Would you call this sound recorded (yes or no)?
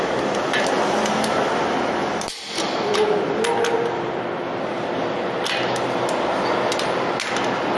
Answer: yes